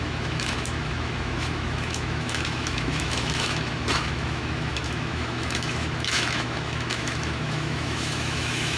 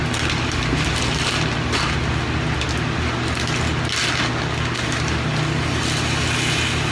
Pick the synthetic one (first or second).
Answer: first